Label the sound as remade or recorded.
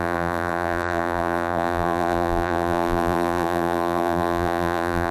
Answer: remade